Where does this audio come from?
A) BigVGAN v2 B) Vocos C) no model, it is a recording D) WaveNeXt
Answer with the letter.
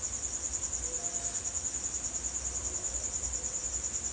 C